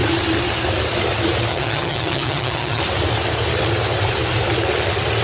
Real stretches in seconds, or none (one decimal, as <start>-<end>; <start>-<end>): 0.0-1.5; 2.8-5.2